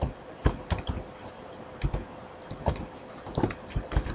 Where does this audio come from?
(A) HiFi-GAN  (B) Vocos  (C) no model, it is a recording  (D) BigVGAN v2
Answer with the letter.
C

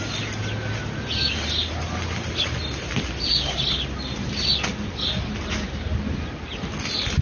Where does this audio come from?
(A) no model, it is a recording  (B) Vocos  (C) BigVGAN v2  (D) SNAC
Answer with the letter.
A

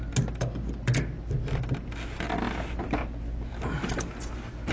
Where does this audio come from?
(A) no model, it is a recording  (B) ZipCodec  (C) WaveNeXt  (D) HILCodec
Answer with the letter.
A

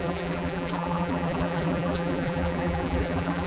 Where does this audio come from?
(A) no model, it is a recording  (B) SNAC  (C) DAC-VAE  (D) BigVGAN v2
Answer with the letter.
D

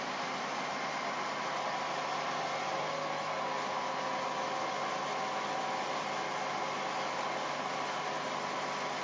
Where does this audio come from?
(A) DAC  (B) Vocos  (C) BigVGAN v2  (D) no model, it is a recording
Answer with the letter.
D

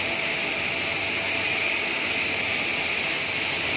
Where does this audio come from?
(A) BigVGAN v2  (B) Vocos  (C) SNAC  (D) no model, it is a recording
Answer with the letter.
D